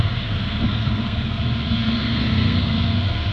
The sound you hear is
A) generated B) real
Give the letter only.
A